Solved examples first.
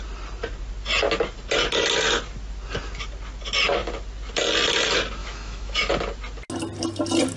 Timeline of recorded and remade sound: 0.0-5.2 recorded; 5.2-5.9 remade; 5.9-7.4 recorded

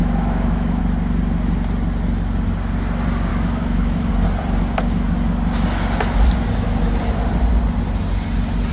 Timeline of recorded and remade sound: 0.0-0.8 remade; 0.8-3.3 recorded; 3.3-4.1 remade; 4.1-8.7 recorded

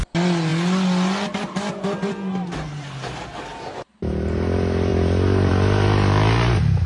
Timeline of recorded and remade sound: 0.0-6.9 recorded

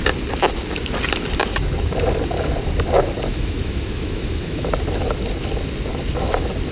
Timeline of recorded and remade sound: 0.0-3.3 recorded; 3.3-4.7 remade; 4.7-6.7 recorded

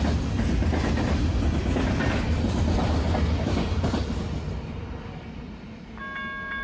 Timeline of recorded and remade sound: 0.0-6.6 recorded

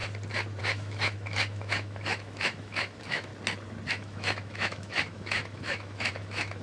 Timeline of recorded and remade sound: 0.0-0.6 recorded; 0.6-3.3 remade; 3.3-3.9 recorded; 3.9-6.6 remade

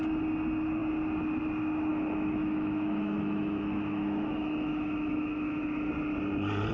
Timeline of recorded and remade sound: 0.0-1.9 recorded; 1.9-5.9 remade; 5.9-6.7 recorded